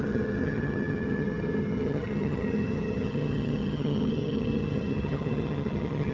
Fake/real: fake